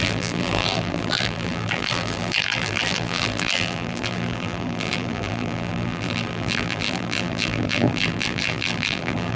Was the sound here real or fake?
fake